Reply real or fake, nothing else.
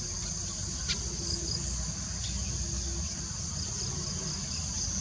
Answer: real